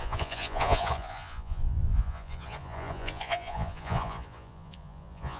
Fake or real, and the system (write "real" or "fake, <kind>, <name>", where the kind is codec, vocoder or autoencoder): fake, vocoder, Vocos